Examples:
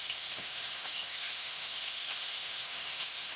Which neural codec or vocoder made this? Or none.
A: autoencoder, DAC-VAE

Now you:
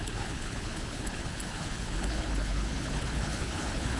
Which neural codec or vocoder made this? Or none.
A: codec, HILCodec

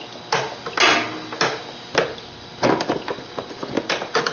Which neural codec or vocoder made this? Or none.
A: none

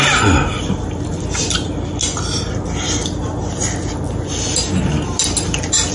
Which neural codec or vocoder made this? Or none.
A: none